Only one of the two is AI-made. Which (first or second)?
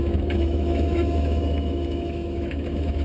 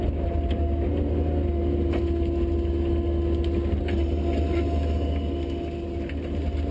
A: first